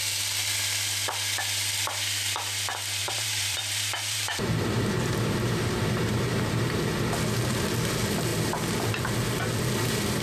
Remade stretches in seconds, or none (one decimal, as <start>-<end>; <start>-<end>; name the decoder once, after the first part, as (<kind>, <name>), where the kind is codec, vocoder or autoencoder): 3.0-7.0 (vocoder, BigVGAN v2)